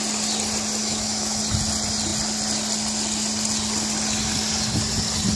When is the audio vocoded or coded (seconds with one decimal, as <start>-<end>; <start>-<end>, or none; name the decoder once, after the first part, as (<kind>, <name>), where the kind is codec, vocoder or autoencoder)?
0.8-1.4 (autoencoder, DAC-VAE)